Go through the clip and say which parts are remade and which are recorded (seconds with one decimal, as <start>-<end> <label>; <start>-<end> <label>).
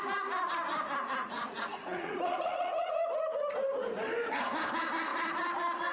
0.0-1.2 recorded; 1.2-3.0 remade; 3.0-5.9 recorded